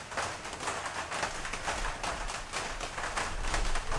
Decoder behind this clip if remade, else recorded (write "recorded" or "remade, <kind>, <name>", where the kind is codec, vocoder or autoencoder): recorded